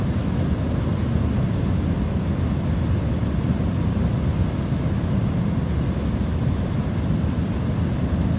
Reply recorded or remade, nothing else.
recorded